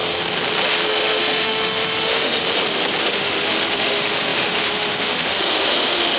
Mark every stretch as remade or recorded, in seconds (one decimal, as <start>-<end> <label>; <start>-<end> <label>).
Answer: 0.0-0.9 recorded; 0.9-2.4 remade; 2.4-3.0 recorded; 3.0-6.2 remade